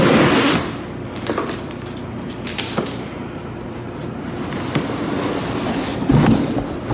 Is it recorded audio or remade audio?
recorded